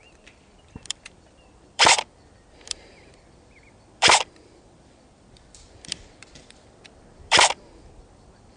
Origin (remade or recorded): remade